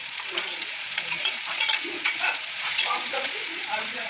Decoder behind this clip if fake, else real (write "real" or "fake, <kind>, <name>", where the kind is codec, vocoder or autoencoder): fake, vocoder, Vocos